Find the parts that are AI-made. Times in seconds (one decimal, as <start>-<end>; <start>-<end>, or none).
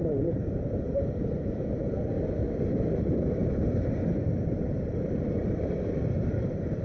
0.0-6.8